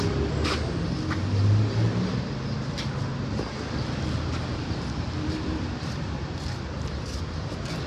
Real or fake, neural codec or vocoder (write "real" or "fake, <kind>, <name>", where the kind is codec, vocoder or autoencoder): real